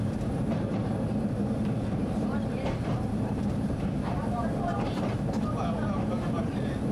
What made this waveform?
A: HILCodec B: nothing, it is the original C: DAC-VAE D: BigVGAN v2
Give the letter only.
D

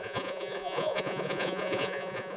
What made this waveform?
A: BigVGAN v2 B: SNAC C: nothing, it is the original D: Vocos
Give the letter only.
D